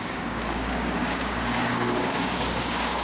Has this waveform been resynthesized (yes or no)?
yes